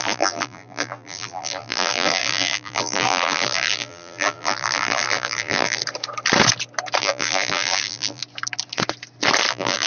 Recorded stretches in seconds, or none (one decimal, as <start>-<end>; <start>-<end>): 5.8-7.0; 8.2-9.5